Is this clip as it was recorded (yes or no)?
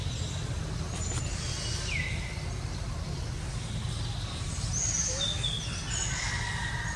yes